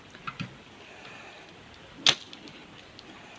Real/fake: real